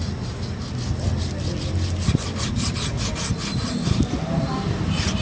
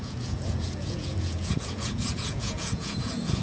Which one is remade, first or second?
second